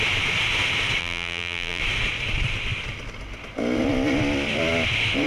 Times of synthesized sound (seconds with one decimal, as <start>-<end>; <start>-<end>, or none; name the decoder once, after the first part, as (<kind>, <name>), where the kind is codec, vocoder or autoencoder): 1.0-1.8 (vocoder, BigVGAN v2)